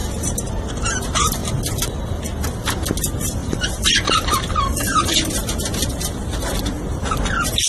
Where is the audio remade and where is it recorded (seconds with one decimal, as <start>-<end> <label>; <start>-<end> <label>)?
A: 0.0-0.7 remade; 0.7-1.4 recorded; 1.4-2.1 remade; 2.1-3.4 recorded; 3.4-6.1 remade; 6.1-7.7 recorded